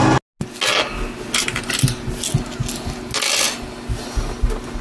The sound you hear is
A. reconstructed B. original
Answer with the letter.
B